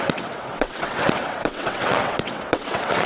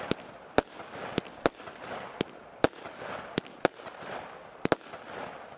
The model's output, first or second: first